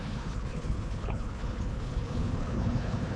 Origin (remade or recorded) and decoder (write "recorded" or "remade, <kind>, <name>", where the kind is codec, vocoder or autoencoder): remade, codec, HILCodec